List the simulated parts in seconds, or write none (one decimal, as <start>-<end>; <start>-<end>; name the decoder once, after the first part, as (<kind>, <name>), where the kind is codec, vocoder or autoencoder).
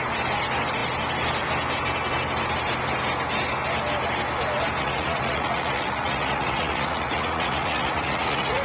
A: 4.8-8.6 (vocoder, Vocos)